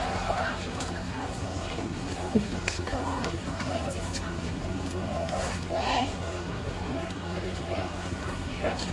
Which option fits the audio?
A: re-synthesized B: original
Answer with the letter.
A